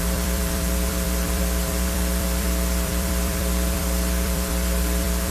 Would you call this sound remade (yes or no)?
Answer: yes